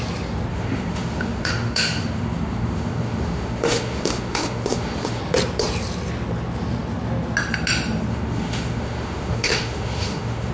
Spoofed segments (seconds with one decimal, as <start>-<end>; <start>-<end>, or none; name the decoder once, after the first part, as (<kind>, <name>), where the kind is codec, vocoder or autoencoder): 0.5-5.2 (autoencoder, DAC-VAE); 8.1-10.5